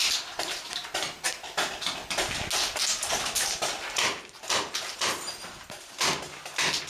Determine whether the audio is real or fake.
real